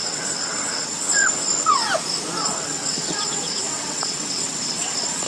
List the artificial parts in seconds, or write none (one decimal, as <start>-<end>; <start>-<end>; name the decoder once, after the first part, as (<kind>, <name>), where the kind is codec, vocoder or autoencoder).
0.0-1.8 (vocoder, WaveNeXt); 2.4-5.3